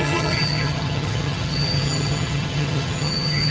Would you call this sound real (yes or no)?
no